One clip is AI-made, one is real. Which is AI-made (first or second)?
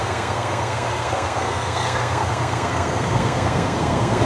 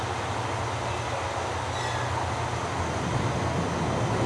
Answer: first